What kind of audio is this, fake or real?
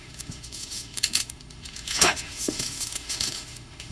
fake